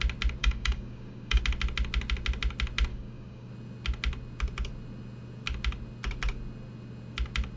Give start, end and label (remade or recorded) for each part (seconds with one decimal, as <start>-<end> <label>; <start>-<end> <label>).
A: 0.0-0.4 recorded; 0.4-1.4 remade; 1.4-2.9 recorded; 2.9-3.5 remade; 3.5-7.6 recorded